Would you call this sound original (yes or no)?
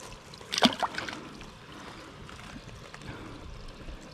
yes